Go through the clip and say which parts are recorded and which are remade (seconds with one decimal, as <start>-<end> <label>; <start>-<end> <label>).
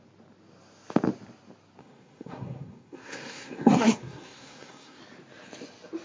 0.0-1.8 recorded; 1.8-5.0 remade; 5.0-6.0 recorded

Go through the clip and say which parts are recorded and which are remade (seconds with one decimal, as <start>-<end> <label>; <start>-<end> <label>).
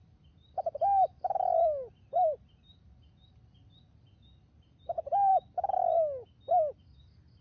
0.0-7.4 recorded